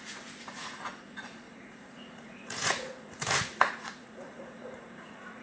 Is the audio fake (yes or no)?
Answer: yes